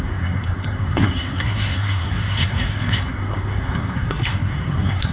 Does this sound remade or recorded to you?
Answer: remade